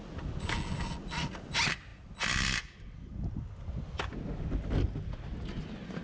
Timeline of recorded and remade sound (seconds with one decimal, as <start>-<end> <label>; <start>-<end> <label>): 0.0-6.0 recorded